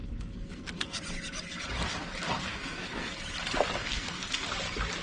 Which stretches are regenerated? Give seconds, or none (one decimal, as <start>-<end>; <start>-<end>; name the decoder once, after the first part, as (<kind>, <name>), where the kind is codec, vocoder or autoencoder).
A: 0.0-1.0 (codec, SNAC); 2.5-3.1; 3.8-4.5